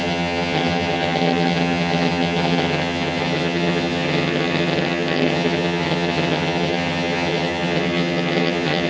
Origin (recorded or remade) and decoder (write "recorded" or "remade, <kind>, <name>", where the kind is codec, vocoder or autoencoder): remade, vocoder, HiFi-GAN